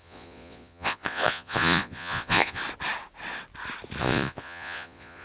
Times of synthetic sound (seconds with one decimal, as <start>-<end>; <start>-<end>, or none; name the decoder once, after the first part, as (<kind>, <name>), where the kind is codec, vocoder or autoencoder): 0.0-2.6 (vocoder, Vocos); 4.0-5.2